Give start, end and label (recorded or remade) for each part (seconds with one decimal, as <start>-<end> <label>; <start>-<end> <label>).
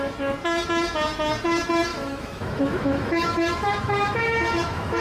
0.0-1.9 recorded; 1.9-5.0 remade